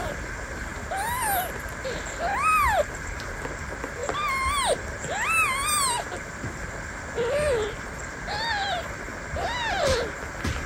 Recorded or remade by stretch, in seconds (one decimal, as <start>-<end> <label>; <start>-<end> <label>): 0.0-10.7 recorded